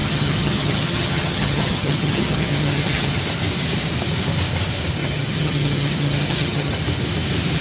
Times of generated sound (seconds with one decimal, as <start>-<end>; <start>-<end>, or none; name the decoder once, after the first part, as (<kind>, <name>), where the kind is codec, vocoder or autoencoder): 0.0-3.2 (vocoder, HiFi-GAN); 5.0-6.7